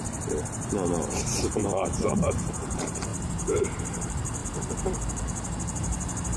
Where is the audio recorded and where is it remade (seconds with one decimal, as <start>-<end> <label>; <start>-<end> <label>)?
0.0-4.4 remade; 4.4-5.2 recorded; 5.2-6.4 remade